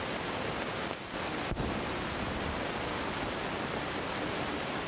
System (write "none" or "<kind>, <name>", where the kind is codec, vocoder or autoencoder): none